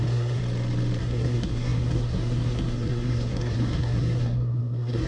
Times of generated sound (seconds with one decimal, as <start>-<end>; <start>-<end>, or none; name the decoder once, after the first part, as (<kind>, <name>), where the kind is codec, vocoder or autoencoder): 0.0-0.4 (codec, SNAC); 1.0-5.1